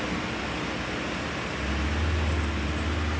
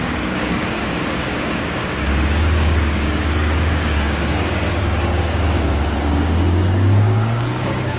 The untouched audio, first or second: first